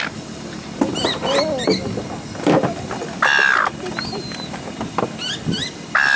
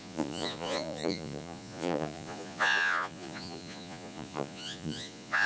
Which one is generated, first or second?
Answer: second